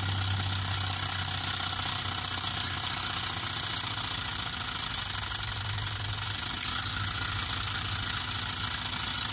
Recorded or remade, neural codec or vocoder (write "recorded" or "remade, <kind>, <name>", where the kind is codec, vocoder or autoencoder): recorded